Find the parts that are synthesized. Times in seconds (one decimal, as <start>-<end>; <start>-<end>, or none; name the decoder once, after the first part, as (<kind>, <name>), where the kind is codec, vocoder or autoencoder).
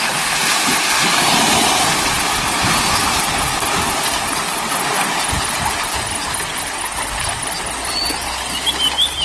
none